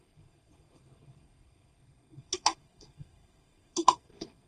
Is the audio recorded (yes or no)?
no